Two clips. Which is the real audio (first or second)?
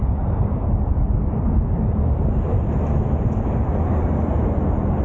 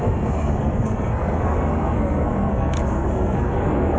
first